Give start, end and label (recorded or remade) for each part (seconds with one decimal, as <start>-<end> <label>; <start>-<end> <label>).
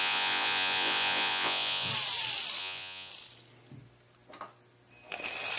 0.0-1.9 remade; 1.9-2.6 recorded; 2.6-3.1 remade; 3.1-5.6 recorded